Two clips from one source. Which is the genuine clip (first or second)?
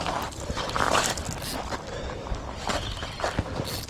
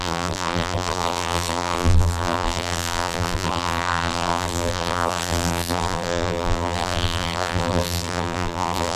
first